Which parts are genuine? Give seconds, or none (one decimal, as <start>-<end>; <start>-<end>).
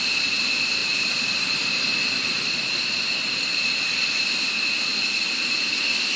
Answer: 0.0-0.8; 4.5-6.2